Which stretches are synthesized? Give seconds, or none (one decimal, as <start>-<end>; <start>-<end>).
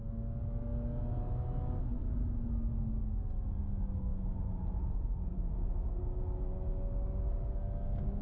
4.1-6.0